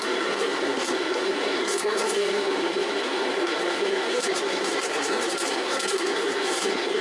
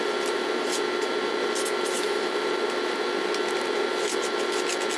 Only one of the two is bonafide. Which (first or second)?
second